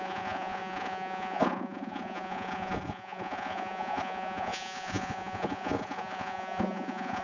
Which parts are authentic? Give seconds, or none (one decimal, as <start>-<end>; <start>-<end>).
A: none